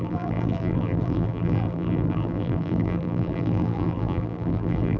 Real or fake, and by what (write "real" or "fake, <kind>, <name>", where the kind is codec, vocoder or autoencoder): fake, vocoder, BigVGAN v2